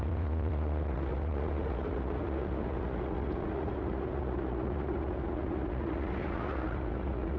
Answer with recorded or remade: remade